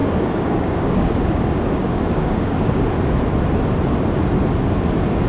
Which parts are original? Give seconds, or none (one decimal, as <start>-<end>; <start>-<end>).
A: 2.9-5.3